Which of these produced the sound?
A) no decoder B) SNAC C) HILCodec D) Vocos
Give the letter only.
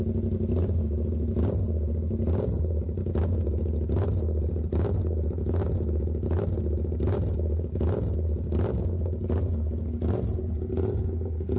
A